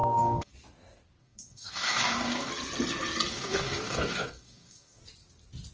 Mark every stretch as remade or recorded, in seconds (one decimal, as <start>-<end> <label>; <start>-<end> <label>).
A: 0.0-0.5 remade; 0.5-1.2 recorded; 1.2-2.5 remade; 2.5-3.3 recorded; 3.3-5.0 remade; 5.0-5.7 recorded